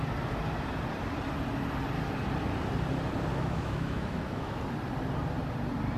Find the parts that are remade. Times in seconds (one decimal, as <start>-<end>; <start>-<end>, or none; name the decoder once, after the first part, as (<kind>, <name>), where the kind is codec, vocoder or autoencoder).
3.3-4.6 (autoencoder, DAC-VAE)

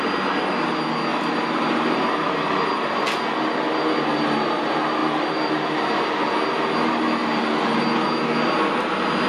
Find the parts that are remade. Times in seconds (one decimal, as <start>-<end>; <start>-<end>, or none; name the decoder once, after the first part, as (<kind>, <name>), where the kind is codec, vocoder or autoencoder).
1.1-2.3 (vocoder, BigVGAN v2); 5.0-5.5; 7.2-7.8

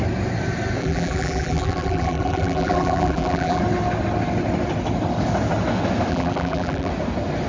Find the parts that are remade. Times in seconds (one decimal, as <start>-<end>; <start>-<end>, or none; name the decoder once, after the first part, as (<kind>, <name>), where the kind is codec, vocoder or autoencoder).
0.8-3.6 (vocoder, BigVGAN v2); 6.1-6.9

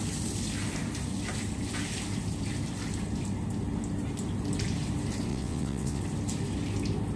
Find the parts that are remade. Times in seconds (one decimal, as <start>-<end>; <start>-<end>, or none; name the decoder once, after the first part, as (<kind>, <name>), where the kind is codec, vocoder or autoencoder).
5.3-6.0 (vocoder, WaveNeXt)

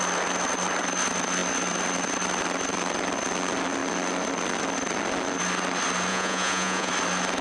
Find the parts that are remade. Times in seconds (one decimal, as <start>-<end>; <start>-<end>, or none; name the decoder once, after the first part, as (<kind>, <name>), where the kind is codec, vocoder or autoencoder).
6.1-6.9 (vocoder, Vocos)

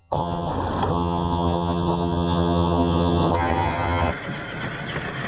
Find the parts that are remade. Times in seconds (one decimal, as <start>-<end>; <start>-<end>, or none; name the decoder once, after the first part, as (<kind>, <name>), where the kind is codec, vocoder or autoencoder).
0.0-0.5 (vocoder, HiFi-GAN); 0.9-4.1

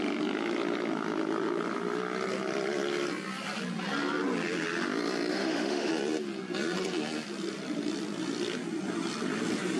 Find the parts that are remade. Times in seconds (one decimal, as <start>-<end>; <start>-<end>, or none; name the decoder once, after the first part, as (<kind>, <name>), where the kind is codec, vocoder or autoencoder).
5.3-5.9 (autoencoder, DAC-VAE)

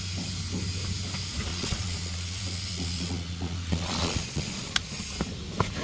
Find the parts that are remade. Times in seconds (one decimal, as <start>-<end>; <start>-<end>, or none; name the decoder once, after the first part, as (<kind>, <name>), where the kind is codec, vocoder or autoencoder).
1.5-5.0 (vocoder, Vocos)